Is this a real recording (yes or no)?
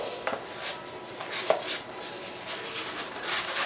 yes